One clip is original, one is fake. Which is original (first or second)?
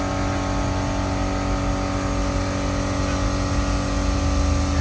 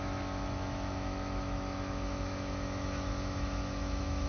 first